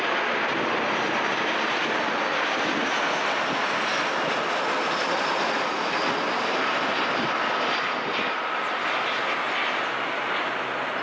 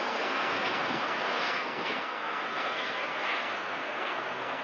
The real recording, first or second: first